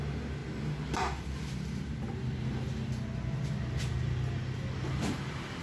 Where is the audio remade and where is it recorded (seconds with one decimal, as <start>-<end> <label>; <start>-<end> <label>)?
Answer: 0.0-5.6 recorded